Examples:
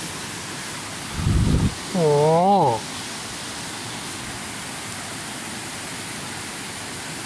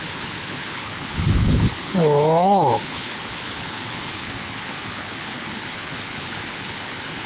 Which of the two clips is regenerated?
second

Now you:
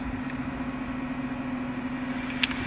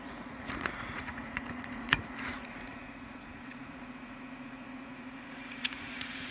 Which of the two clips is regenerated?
second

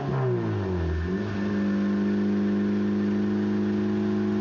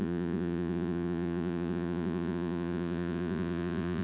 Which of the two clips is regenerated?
second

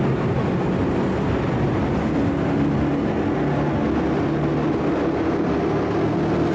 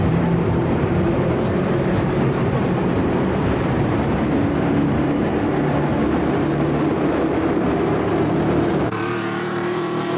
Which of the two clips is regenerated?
second